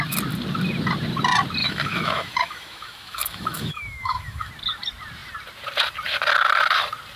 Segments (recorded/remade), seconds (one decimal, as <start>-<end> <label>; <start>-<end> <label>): 0.0-1.6 recorded; 1.6-4.5 remade; 4.5-7.2 recorded